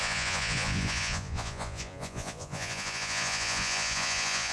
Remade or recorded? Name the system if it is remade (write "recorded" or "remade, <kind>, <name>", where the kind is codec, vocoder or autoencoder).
remade, vocoder, Vocos